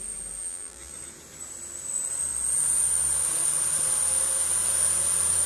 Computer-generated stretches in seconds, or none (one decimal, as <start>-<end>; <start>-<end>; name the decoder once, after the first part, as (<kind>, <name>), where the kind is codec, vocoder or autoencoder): 0.4-0.9 (vocoder, BigVGAN v2)